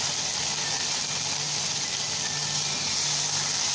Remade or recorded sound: recorded